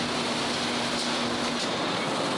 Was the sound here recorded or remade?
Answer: recorded